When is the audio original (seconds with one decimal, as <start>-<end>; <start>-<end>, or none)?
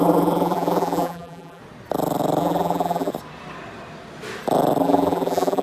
1.6-2.4; 3.1-4.8